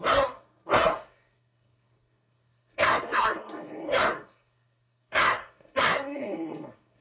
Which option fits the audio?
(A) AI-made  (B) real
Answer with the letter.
A